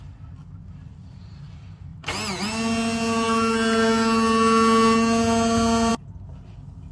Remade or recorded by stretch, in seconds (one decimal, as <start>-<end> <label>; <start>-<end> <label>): 0.0-6.9 recorded